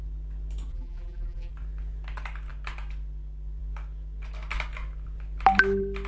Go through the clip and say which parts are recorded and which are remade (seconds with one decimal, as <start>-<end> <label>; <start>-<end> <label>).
0.0-0.7 recorded; 0.7-1.5 remade; 1.5-6.1 recorded